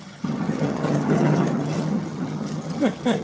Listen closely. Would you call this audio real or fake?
fake